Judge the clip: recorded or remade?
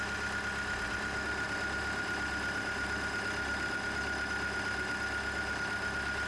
recorded